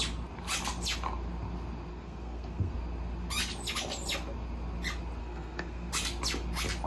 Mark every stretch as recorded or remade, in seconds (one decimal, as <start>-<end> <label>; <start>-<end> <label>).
0.0-1.9 recorded; 1.9-2.7 remade; 2.7-5.2 recorded; 5.2-5.9 remade; 5.9-6.9 recorded